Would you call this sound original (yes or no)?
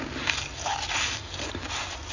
yes